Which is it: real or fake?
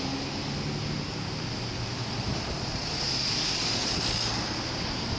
real